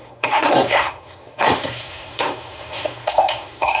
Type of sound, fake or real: fake